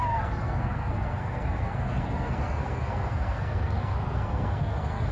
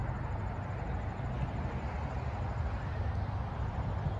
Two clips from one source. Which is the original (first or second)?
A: second